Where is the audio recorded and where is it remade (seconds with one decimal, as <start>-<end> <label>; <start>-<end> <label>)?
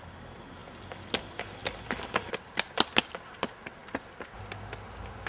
0.0-0.6 recorded; 0.6-1.1 remade; 1.1-3.8 recorded; 3.8-4.4 remade; 4.4-5.3 recorded